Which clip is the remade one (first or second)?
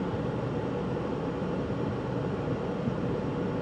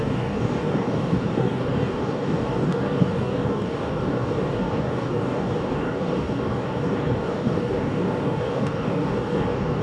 second